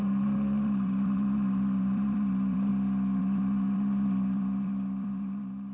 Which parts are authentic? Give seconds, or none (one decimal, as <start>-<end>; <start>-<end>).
2.7-3.2